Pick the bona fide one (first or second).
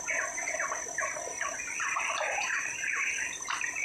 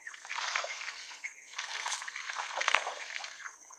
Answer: first